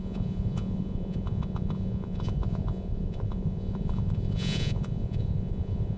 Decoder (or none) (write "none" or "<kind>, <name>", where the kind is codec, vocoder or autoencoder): vocoder, Vocos